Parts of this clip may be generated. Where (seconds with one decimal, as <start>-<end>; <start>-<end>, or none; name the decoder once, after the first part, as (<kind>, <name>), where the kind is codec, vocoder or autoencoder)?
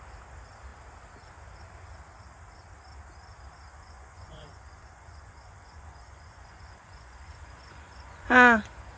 3.7-9.0 (vocoder, Vocos)